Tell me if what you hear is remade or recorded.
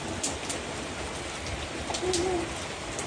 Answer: recorded